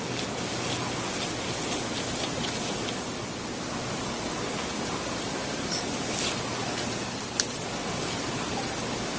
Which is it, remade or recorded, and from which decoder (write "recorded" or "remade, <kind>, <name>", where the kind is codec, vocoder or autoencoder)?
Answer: recorded